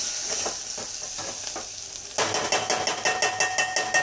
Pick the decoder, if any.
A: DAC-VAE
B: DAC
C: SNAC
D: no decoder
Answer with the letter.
D